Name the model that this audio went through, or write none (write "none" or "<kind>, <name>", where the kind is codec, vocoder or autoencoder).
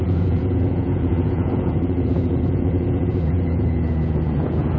vocoder, Vocos